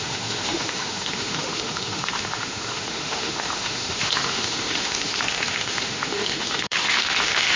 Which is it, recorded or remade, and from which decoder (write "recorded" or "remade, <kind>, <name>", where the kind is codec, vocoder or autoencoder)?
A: remade, autoencoder, DAC-VAE